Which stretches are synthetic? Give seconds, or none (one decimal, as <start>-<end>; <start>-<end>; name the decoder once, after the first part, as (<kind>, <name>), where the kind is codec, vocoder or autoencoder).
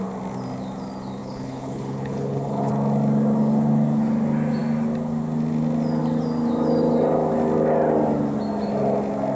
1.2-2.7 (codec, HILCodec)